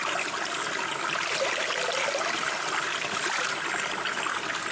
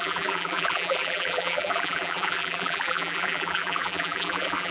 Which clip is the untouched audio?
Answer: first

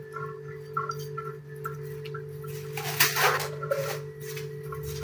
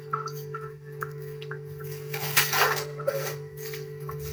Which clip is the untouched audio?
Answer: first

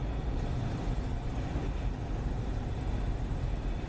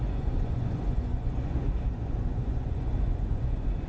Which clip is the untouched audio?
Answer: first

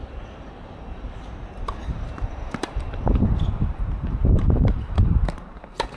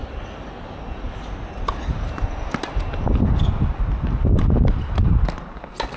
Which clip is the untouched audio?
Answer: second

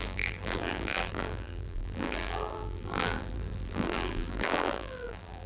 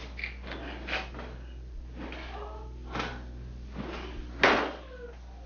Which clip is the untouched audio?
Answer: second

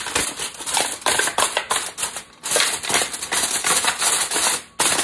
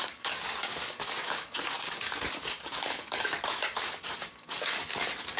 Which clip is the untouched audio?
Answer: first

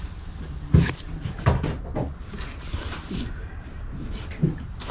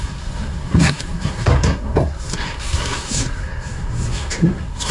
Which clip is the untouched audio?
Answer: first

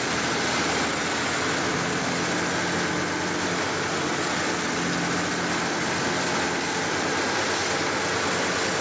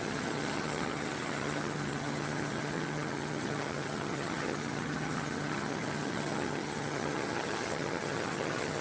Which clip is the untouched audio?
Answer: first